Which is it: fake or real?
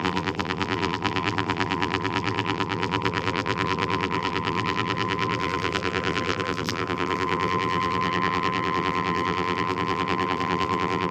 fake